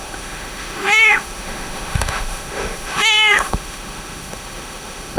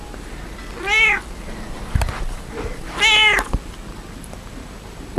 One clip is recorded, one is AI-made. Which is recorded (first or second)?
second